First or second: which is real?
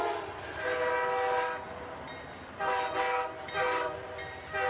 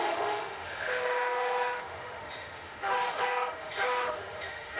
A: first